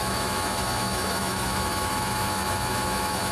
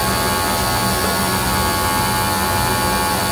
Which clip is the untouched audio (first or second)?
second